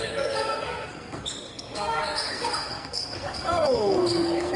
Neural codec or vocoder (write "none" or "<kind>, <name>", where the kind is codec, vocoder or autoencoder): codec, SNAC